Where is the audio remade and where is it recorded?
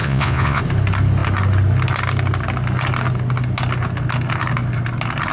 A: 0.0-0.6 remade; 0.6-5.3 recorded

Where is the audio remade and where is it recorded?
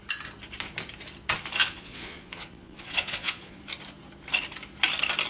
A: 0.0-1.6 recorded; 1.6-3.6 remade; 3.6-5.3 recorded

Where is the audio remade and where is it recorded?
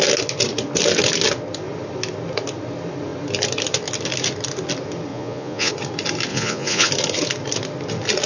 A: 0.0-5.1 recorded; 5.1-5.7 remade; 5.7-6.3 recorded; 6.3-6.9 remade; 6.9-8.3 recorded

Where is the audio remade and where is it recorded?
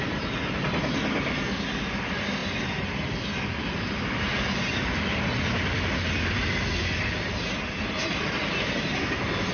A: 0.0-9.5 recorded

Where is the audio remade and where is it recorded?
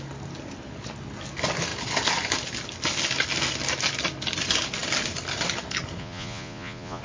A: 0.0-6.0 recorded; 6.0-7.0 remade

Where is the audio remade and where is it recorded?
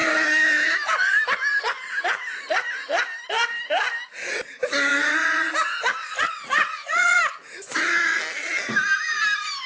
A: 0.0-4.9 recorded; 4.9-5.5 remade; 5.5-6.0 recorded; 6.0-7.2 remade; 7.2-9.7 recorded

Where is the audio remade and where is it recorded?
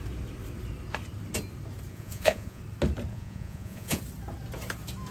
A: 0.0-1.9 recorded; 1.9-2.6 remade; 2.6-3.1 recorded; 3.1-4.0 remade; 4.0-5.1 recorded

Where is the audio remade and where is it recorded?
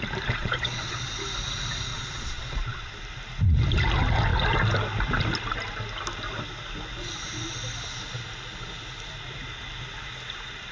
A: 0.0-0.4 recorded; 0.4-1.1 remade; 1.1-1.9 recorded; 1.9-3.0 remade; 3.0-10.7 recorded